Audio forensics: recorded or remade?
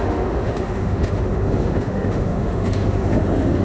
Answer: remade